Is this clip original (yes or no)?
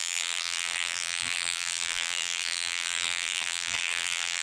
no